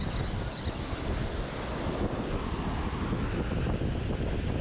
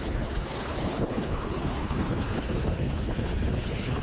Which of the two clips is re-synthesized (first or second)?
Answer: second